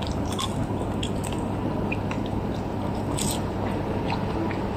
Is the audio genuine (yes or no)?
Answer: yes